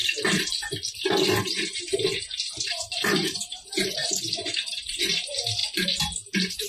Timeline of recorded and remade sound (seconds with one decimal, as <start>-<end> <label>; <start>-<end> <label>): 0.0-1.4 recorded; 1.4-5.6 remade; 5.6-6.3 recorded; 6.3-6.7 remade